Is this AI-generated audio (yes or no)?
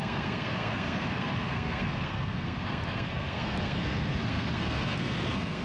yes